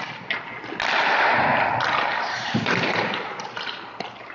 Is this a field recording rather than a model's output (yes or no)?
yes